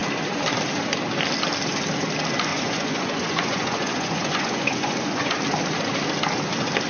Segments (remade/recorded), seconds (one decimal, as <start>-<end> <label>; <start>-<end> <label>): 0.0-2.5 recorded; 2.5-5.4 remade; 5.4-6.9 recorded